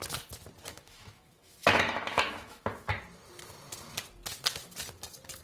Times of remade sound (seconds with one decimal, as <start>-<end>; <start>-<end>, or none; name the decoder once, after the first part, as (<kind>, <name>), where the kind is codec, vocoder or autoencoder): 0.7-2.9 (autoencoder, DAC-VAE)